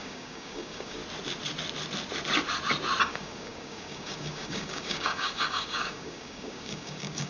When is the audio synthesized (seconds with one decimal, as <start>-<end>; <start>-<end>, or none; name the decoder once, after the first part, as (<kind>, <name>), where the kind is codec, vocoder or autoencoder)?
0.0-1.0 (codec, DAC); 3.0-7.3